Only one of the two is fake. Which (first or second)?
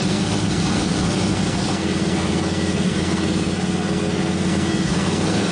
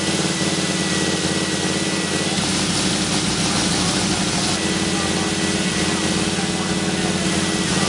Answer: first